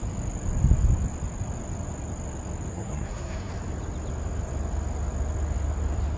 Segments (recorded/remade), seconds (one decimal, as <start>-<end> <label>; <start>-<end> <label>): 0.0-2.7 recorded; 2.7-3.5 remade; 3.5-6.2 recorded